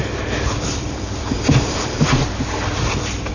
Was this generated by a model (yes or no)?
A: yes